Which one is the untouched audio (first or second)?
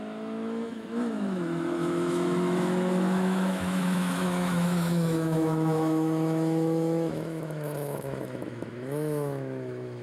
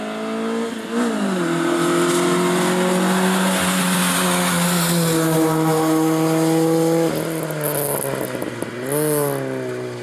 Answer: second